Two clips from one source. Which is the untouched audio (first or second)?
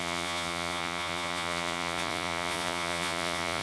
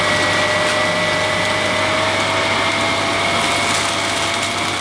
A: second